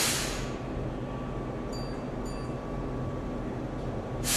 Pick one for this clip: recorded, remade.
recorded